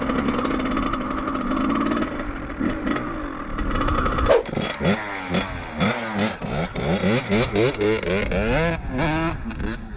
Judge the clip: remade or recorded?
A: recorded